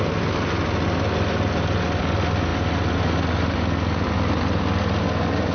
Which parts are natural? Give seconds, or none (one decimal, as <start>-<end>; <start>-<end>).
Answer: 0.0-5.5